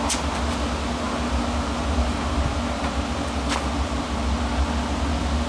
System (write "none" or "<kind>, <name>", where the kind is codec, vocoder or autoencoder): none